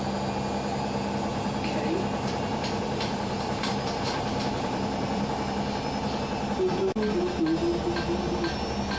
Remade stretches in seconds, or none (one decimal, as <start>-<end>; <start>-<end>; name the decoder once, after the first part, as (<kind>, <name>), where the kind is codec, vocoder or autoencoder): 1.3-5.5 (vocoder, BigVGAN v2)